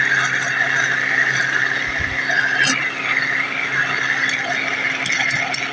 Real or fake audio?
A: real